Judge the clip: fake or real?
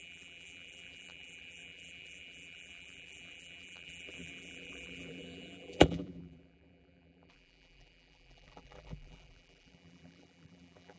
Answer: fake